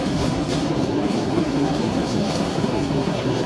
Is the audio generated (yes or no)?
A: yes